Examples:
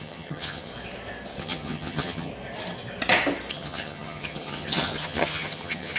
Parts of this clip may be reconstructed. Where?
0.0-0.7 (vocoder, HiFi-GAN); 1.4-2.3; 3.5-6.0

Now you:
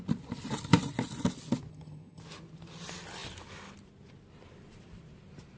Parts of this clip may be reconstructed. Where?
1.7-2.2 (vocoder, HiFi-GAN)

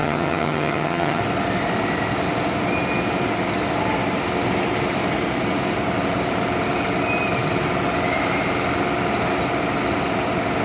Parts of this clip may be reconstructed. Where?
0.0-1.2 (vocoder, HiFi-GAN)

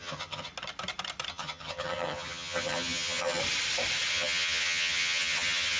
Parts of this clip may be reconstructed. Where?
0.0-0.5 (vocoder, HiFi-GAN); 1.3-3.4; 4.1-5.8

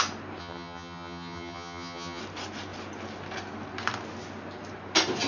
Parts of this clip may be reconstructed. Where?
0.4-2.2 (vocoder, HiFi-GAN)

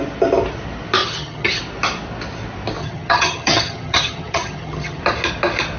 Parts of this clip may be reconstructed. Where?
1.0-1.6 (vocoder, HiFi-GAN); 2.8-5.0